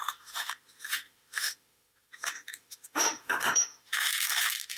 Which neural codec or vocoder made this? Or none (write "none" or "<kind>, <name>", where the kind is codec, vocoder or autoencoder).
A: autoencoder, DAC-VAE